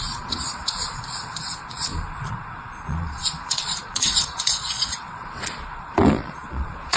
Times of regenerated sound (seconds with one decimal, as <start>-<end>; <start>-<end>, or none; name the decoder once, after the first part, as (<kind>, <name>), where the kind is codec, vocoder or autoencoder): 0.0-7.0 (vocoder, Vocos)